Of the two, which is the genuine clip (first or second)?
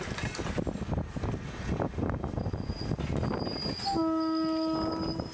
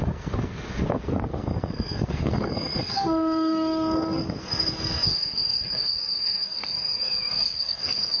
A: first